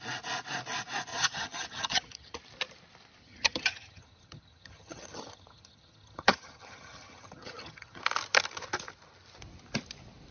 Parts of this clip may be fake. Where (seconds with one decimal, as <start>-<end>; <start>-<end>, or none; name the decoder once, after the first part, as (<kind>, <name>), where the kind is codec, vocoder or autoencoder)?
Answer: 1.1-2.4 (vocoder, HiFi-GAN); 3.2-8.0